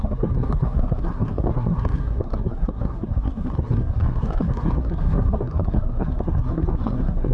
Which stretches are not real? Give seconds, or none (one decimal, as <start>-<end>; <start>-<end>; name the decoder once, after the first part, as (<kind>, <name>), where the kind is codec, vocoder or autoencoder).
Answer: 0.0-7.3 (codec, SNAC)